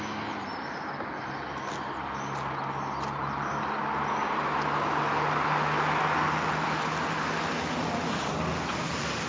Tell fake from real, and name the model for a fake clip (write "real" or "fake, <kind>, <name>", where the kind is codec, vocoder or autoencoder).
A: real